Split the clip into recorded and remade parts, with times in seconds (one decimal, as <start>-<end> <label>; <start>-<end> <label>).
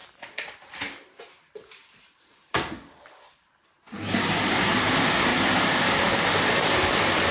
0.0-1.2 remade; 1.2-1.8 recorded; 1.8-2.7 remade; 2.7-5.3 recorded; 5.3-7.3 remade